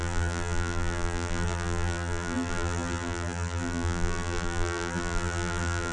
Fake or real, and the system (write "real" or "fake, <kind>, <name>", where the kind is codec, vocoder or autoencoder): fake, vocoder, BigVGAN v2